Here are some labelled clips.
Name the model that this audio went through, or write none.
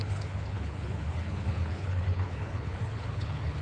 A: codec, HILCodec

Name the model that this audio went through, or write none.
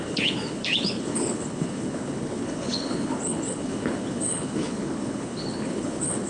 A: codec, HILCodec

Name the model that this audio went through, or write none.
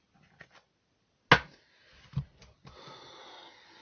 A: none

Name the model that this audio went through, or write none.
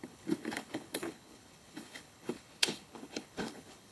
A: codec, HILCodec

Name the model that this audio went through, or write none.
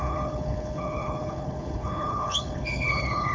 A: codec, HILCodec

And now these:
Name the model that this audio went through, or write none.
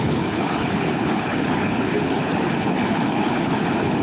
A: codec, HILCodec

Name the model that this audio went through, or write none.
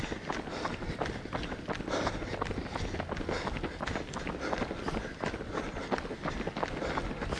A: none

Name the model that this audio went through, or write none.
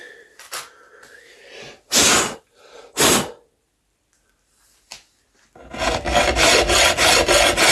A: none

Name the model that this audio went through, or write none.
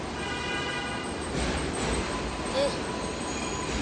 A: none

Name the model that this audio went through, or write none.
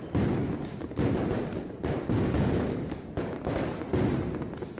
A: none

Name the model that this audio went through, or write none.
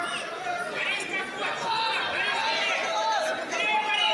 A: none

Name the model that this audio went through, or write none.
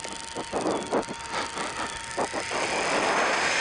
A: none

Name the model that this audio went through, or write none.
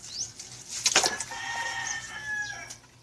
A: none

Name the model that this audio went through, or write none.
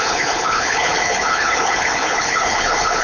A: codec, HILCodec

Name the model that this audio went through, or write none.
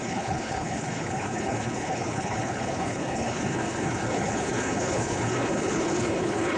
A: codec, HILCodec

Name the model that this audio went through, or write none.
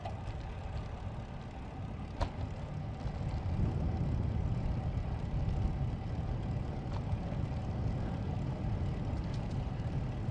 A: none